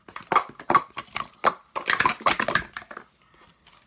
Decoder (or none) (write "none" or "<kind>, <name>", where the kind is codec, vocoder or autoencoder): none